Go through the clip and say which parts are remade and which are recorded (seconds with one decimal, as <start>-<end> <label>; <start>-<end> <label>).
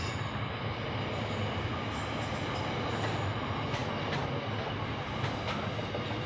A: 0.0-6.3 recorded